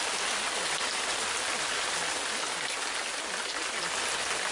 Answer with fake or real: real